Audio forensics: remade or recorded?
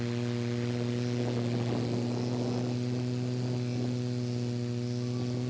recorded